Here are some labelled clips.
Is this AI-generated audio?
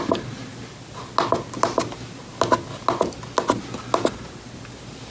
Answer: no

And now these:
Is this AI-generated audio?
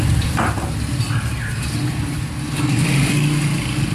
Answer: no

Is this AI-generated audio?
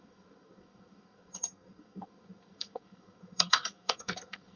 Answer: yes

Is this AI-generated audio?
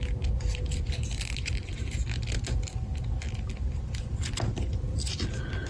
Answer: no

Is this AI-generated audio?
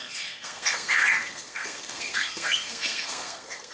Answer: yes